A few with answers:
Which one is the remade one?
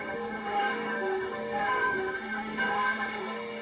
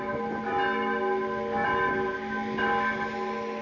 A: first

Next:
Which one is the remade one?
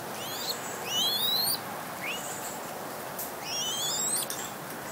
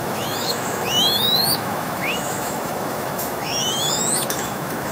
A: second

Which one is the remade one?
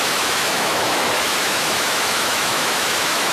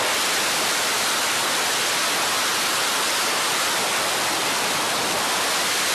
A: first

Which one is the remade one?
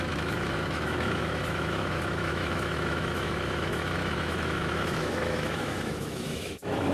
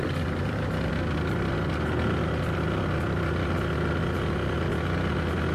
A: first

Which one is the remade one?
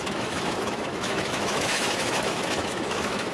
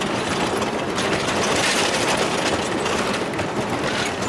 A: first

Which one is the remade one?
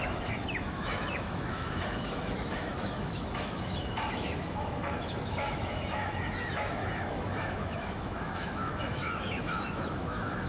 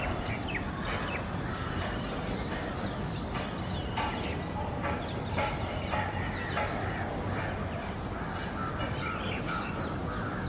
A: first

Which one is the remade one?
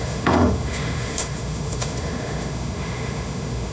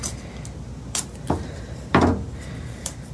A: first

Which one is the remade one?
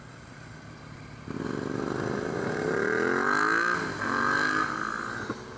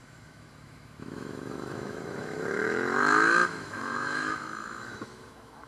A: second